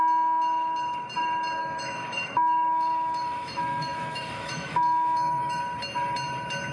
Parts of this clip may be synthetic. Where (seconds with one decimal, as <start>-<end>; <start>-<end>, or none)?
1.6-5.6